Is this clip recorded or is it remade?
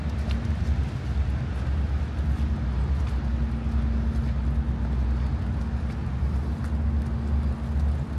recorded